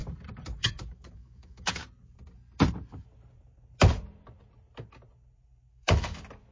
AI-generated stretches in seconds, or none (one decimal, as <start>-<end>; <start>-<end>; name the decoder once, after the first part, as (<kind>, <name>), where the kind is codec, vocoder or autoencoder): 0.6-1.8 (autoencoder, DAC-VAE); 5.7-6.5